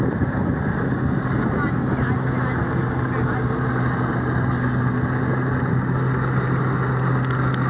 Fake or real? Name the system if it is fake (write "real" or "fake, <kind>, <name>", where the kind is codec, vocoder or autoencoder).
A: real